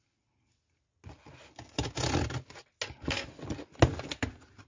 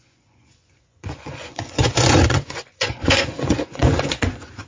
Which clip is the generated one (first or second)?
second